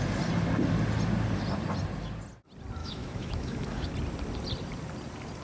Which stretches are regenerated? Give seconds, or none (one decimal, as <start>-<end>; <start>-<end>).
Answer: 2.8-3.9